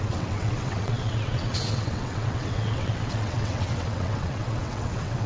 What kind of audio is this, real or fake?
fake